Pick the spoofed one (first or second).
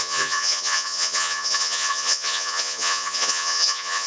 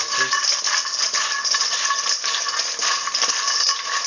first